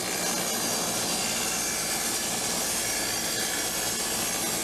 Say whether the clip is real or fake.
real